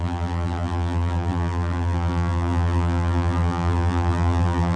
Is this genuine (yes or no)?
no